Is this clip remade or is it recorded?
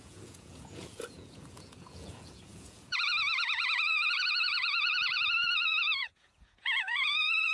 remade